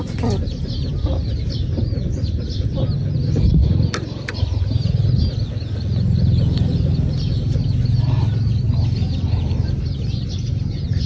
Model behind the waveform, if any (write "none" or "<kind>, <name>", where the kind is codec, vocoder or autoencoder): none